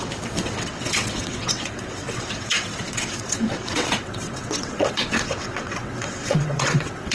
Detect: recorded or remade remade